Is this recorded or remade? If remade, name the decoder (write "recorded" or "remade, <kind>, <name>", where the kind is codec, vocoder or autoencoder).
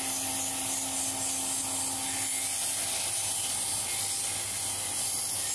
recorded